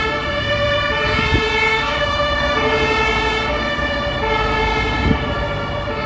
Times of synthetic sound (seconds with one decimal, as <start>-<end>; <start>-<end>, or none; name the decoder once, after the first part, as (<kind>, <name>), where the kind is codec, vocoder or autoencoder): 1.7-2.4 (autoencoder, DAC-VAE)